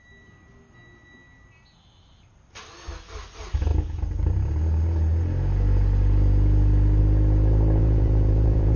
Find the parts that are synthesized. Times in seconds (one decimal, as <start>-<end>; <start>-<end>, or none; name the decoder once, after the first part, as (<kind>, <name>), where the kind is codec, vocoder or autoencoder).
7.8-8.8 (vocoder, Vocos)